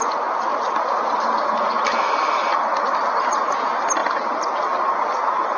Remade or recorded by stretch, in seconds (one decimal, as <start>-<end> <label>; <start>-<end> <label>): 0.0-5.6 recorded